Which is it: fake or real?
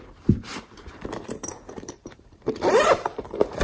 fake